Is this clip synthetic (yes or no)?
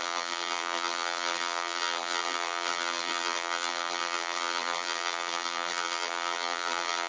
yes